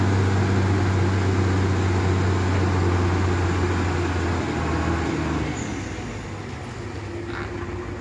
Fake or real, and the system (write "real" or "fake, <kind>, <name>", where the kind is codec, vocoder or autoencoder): real